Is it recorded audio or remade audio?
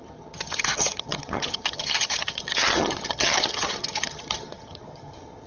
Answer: remade